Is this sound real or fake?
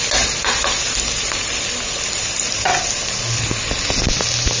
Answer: real